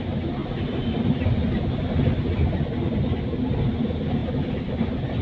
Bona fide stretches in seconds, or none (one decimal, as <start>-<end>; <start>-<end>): 0.0-5.2